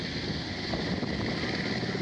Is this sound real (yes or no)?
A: yes